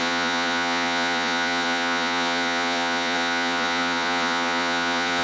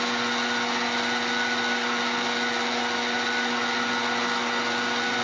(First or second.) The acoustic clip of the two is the second